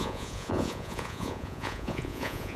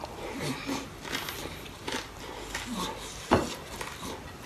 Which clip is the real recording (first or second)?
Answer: second